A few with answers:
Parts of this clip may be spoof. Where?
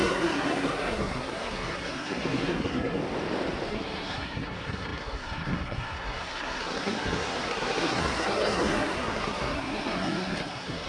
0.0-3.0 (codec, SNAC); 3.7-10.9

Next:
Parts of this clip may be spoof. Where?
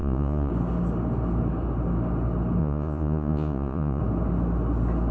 0.0-0.5 (vocoder, Vocos); 2.6-4.0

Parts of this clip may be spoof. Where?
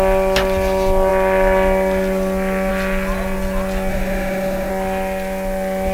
3.9-4.7 (autoencoder, DAC-VAE)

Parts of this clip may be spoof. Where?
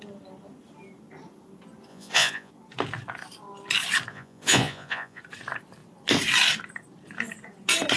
1.9-2.5 (vocoder, Vocos); 4.1-5.2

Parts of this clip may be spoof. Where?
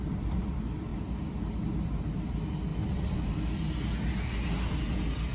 none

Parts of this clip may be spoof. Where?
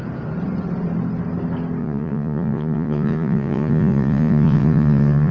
1.8-5.3 (vocoder, Vocos)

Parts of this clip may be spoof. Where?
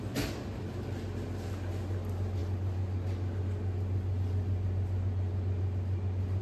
none